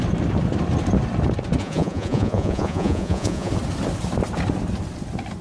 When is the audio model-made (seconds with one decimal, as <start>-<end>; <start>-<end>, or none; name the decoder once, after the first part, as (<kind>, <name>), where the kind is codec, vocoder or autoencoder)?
1.6-3.5 (vocoder, Vocos)